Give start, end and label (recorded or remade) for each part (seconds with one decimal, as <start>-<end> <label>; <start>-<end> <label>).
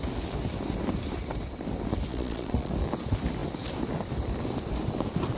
0.0-2.1 recorded; 2.1-2.7 remade; 2.7-5.4 recorded